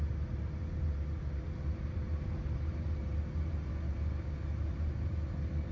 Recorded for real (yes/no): yes